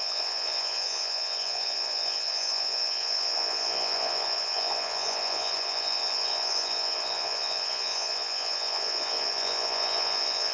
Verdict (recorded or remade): remade